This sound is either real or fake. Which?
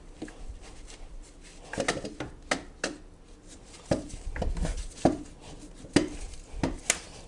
real